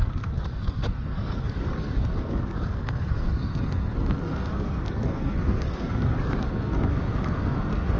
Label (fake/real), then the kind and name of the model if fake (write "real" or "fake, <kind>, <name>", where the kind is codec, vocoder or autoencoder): fake, codec, SNAC